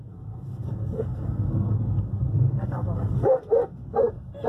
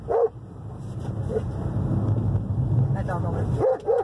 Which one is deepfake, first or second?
first